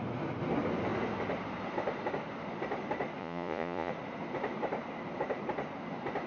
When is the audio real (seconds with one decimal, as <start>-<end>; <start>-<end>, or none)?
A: 0.0-3.2; 3.9-6.3